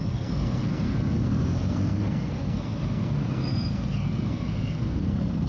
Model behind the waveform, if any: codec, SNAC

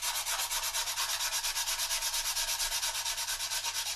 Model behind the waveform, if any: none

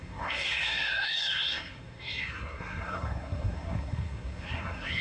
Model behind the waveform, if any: codec, SNAC